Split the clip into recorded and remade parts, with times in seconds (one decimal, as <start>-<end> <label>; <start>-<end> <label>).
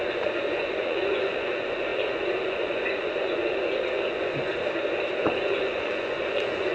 0.0-4.5 remade; 4.5-5.1 recorded; 5.1-6.7 remade